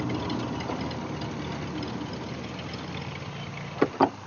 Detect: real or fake real